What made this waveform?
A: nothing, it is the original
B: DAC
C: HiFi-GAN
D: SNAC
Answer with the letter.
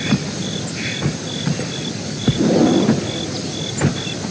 A